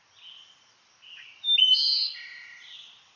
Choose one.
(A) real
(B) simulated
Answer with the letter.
A